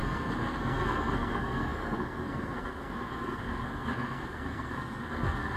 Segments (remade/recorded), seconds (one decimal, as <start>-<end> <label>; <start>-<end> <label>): 0.0-5.6 remade